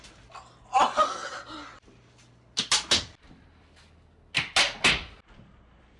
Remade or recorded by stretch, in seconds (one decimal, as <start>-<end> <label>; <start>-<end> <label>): 0.0-6.0 recorded